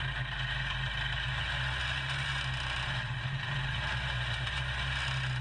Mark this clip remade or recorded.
recorded